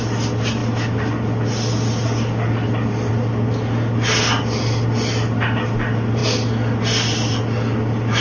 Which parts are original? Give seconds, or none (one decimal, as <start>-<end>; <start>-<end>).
0.0-8.2